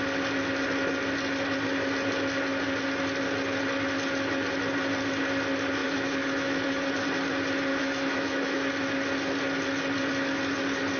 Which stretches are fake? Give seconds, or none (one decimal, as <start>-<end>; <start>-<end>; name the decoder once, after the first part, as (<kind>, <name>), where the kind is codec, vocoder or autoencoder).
5.8-6.9 (autoencoder, DAC-VAE); 7.7-8.7